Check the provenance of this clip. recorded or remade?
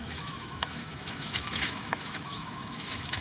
remade